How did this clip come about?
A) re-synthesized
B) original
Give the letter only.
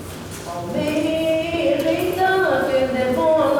B